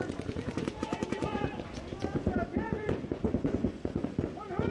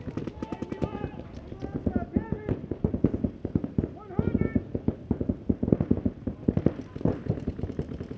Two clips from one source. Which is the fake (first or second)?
first